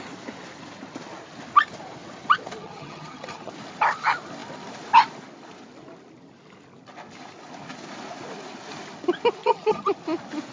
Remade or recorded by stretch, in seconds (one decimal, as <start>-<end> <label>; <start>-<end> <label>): 0.0-2.6 recorded; 2.6-3.5 remade; 3.5-9.4 recorded; 9.4-9.9 remade; 9.9-10.5 recorded